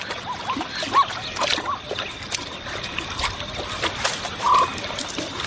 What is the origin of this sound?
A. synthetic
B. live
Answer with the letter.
B